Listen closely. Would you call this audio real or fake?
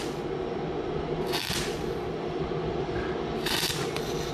real